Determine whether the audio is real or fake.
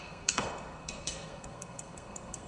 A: fake